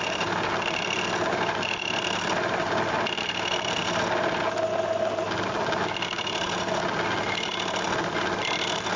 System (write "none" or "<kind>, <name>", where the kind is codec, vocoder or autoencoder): none